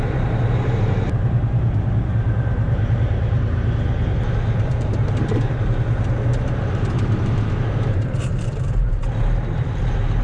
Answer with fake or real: fake